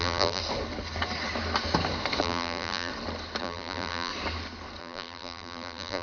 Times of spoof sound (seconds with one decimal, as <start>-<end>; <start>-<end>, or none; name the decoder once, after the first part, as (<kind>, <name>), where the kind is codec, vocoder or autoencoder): 0.0-0.4 (vocoder, BigVGAN v2); 2.2-2.9; 3.4-4.1; 4.8-6.0